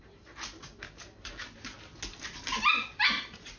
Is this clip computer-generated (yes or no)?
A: no